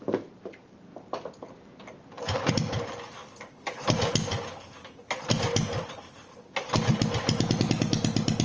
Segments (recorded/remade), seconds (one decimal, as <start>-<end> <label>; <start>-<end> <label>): 0.0-8.4 recorded